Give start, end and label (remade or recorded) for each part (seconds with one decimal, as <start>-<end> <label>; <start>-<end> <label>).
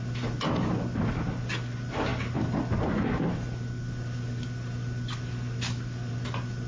0.0-6.7 recorded